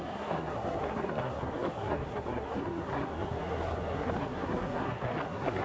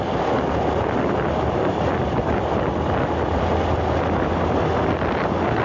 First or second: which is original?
second